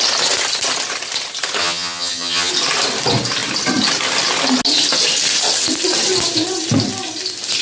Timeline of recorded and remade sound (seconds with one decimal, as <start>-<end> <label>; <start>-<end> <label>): 0.0-1.6 recorded; 1.6-2.5 remade; 2.5-7.6 recorded